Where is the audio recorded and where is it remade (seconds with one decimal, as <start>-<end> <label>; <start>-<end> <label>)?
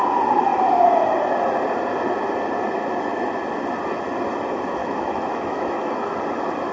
0.0-4.8 recorded; 4.8-6.2 remade; 6.2-6.7 recorded